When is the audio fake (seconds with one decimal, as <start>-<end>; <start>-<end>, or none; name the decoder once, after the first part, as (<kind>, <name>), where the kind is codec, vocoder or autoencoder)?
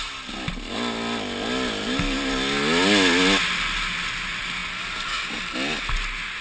none